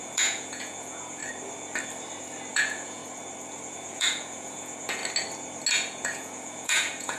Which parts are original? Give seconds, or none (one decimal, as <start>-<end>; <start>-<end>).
1.2-2.5; 3.0-3.7; 5.0-5.7